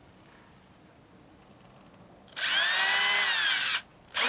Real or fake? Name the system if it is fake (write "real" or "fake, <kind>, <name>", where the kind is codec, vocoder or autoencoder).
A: real